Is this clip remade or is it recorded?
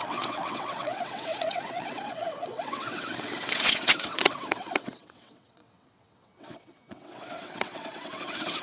remade